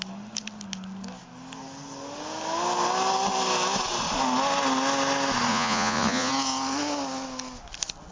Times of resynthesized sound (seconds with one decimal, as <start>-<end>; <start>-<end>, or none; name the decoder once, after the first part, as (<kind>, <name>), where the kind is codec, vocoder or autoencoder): 5.5-6.3 (vocoder, Vocos)